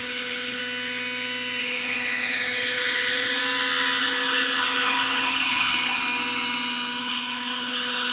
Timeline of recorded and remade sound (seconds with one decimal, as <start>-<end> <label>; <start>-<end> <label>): 0.0-0.6 remade; 0.6-1.6 recorded; 1.6-3.4 remade; 3.4-4.0 recorded; 4.0-6.0 remade; 6.0-7.0 recorded; 7.0-8.1 remade